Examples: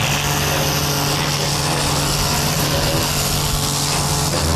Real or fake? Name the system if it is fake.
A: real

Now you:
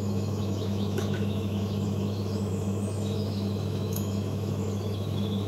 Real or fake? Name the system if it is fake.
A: fake, autoencoder, DAC-VAE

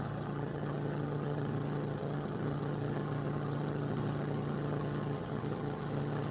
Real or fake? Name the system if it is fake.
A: fake, vocoder, HiFi-GAN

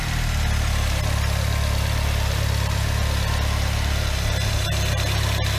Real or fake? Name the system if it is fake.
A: real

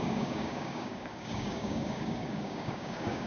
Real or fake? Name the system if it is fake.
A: fake, codec, DAC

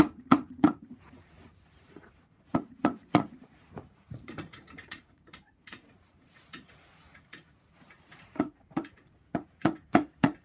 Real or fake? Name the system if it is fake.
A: fake, vocoder, Vocos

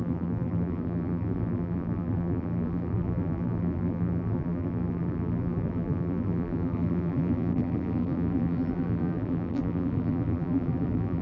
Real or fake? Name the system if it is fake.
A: fake, vocoder, BigVGAN v2